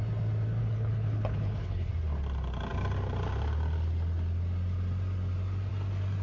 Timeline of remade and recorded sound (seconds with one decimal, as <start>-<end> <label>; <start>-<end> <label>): 0.0-0.6 recorded; 0.6-1.9 remade; 1.9-6.2 recorded